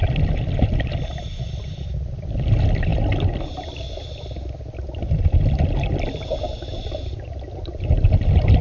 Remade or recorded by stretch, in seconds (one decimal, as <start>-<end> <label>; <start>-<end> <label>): 0.0-8.6 recorded